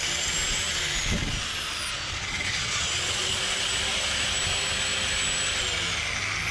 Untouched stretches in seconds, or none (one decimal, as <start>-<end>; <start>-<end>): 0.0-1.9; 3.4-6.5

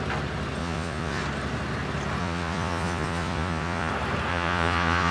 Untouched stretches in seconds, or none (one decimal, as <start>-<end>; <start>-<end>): 0.0-0.6; 1.2-2.2; 3.9-4.3

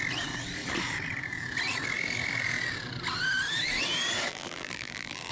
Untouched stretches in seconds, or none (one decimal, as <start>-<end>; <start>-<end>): 0.0-4.3